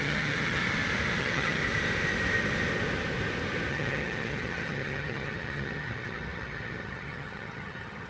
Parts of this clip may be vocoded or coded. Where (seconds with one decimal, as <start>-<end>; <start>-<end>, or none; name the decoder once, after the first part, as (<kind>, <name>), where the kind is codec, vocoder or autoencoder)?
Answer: 0.0-0.6 (vocoder, HiFi-GAN); 1.2-1.6; 3.7-8.1